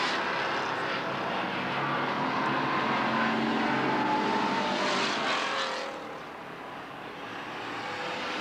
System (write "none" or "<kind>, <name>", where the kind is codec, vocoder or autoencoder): none